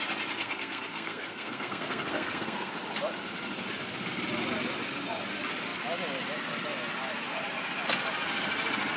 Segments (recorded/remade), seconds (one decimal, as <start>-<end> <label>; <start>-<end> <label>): 0.0-0.4 recorded; 0.4-2.7 remade; 2.7-9.0 recorded